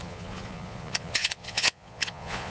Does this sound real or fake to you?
fake